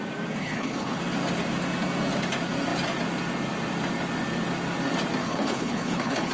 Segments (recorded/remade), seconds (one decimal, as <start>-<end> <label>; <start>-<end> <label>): 0.0-0.4 recorded; 0.4-1.0 remade; 1.0-5.2 recorded; 5.2-6.3 remade